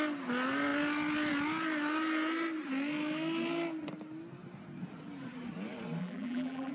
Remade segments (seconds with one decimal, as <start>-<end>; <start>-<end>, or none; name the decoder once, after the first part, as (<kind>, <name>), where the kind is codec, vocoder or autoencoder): 6.0-6.7 (vocoder, BigVGAN v2)